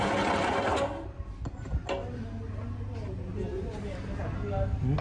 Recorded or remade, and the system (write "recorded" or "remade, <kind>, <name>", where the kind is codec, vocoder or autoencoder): recorded